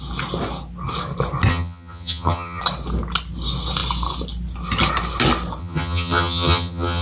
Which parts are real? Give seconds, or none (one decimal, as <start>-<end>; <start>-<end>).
0.0-1.5; 2.6-5.6

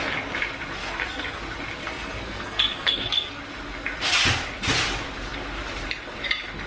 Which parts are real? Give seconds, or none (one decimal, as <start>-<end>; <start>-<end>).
0.0-0.8; 1.4-1.8; 3.4-6.7

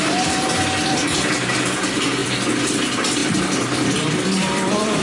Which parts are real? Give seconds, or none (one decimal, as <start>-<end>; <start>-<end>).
0.0-2.2; 2.7-3.2

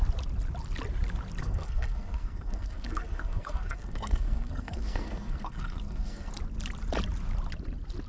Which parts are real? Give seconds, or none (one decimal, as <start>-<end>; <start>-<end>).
0.0-1.4; 6.3-8.1

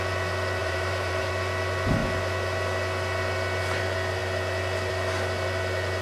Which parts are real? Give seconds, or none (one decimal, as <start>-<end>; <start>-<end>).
0.0-0.6; 1.3-6.0

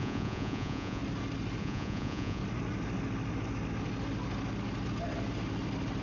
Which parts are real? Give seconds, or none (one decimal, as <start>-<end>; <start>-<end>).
1.0-1.6; 2.4-6.0